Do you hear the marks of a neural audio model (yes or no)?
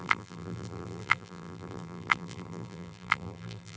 yes